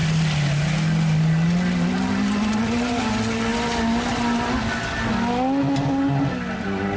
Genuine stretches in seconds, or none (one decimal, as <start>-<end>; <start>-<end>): 0.0-7.0